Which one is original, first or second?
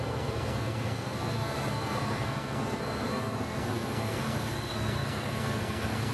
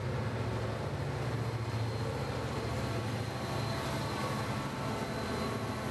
second